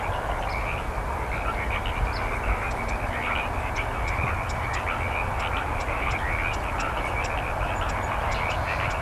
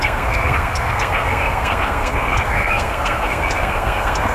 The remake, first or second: second